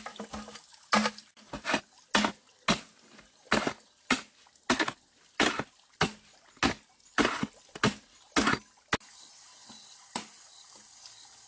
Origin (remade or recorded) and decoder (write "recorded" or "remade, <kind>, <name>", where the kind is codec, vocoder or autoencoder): recorded